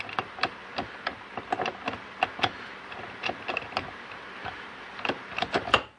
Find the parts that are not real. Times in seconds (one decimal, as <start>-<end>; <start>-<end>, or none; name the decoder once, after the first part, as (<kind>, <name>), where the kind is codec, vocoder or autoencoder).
0.0-0.6 (vocoder, BigVGAN v2); 4.2-6.0